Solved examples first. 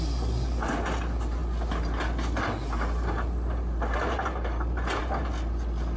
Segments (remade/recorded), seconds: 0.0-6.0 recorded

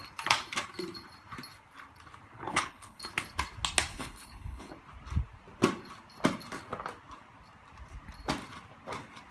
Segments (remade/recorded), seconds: 0.0-2.5 recorded; 2.5-3.0 remade; 3.0-3.9 recorded; 3.9-4.7 remade; 4.7-9.3 recorded

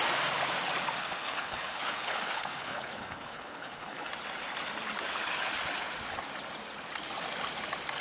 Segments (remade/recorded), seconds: 0.0-1.0 recorded; 1.0-4.1 remade; 4.1-8.0 recorded

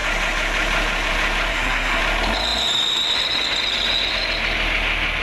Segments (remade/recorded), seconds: 0.0-1.5 recorded; 1.5-2.0 remade; 2.0-5.2 recorded

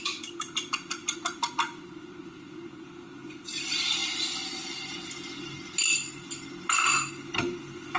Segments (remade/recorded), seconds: 0.0-8.0 recorded

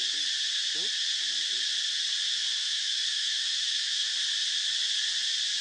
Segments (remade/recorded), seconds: 0.0-2.6 recorded; 2.6-4.1 remade; 4.1-5.6 recorded

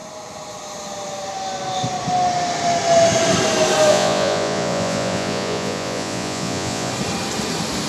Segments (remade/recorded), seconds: 0.0-3.9 recorded; 3.9-6.9 remade; 6.9-7.9 recorded